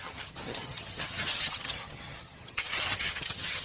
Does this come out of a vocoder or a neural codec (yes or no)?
yes